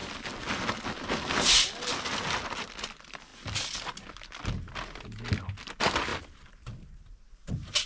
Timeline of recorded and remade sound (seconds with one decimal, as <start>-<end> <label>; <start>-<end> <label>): 0.0-6.1 recorded; 6.1-7.9 remade